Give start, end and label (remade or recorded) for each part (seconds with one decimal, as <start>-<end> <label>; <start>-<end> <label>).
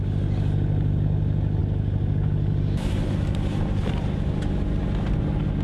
0.0-5.6 recorded